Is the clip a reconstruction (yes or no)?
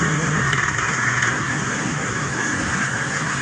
yes